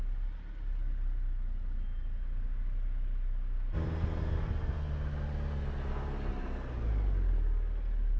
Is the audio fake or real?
real